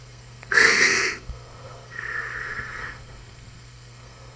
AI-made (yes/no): yes